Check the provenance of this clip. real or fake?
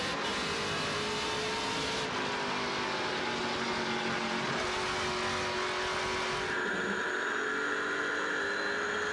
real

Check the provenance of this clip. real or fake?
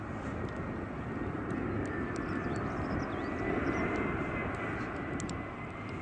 real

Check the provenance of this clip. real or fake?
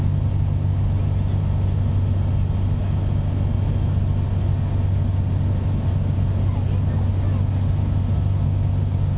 real